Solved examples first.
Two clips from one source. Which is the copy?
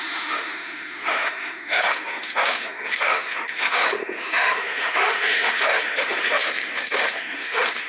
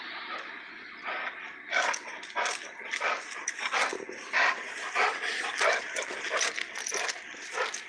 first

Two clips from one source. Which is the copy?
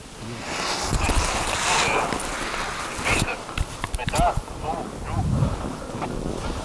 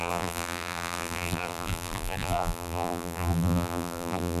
second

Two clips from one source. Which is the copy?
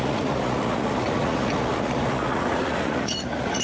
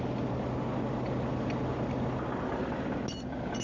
first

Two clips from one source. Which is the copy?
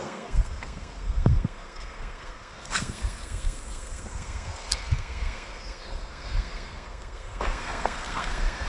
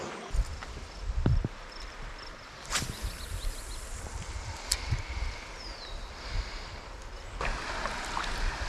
first